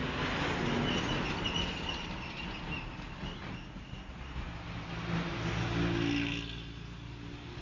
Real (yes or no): yes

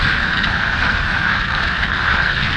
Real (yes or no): no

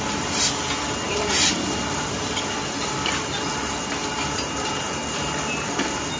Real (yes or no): yes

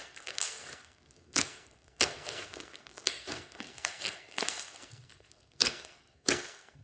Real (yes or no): no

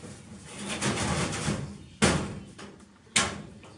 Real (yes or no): yes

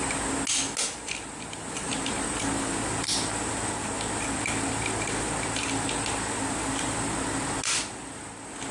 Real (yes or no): yes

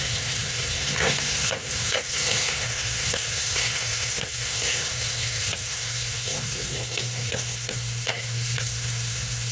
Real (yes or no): no